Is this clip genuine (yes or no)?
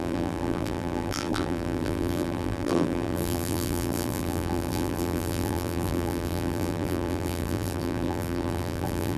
no